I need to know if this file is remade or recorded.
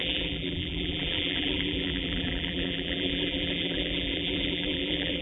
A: remade